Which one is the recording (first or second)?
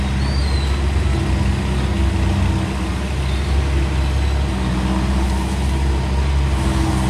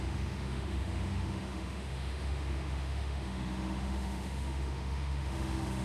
first